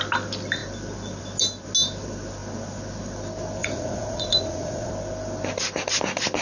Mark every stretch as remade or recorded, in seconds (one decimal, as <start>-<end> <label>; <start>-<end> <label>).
0.0-3.6 recorded; 3.6-4.9 remade; 4.9-6.4 recorded